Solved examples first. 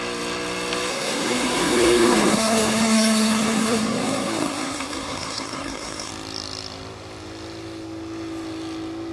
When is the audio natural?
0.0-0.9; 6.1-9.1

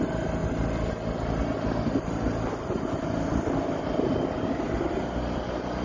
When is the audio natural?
0.0-5.8

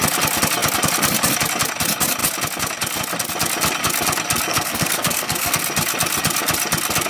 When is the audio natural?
0.0-4.5; 5.6-7.1

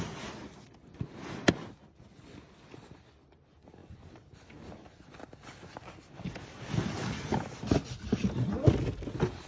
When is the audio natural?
0.0-9.5

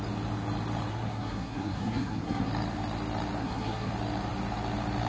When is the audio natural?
0.0-0.9; 2.5-3.4; 3.9-5.1

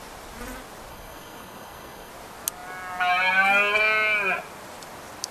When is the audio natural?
0.0-0.9; 2.1-5.3

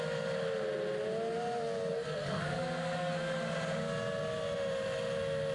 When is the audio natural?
0.0-1.9; 3.4-5.5